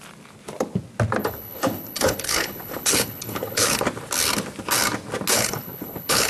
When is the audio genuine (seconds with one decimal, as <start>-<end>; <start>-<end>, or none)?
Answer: 0.0-1.2; 3.8-5.3